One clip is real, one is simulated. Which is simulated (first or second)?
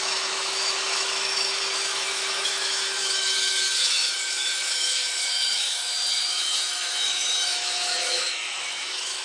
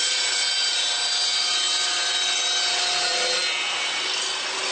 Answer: first